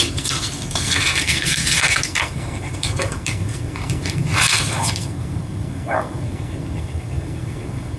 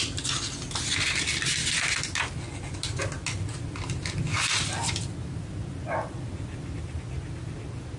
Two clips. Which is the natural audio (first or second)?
second